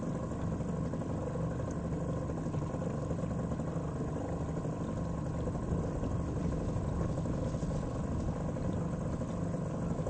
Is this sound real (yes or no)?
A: yes